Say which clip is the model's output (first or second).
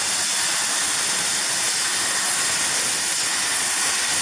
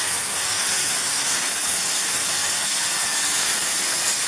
second